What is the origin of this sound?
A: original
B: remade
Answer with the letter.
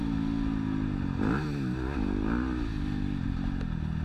A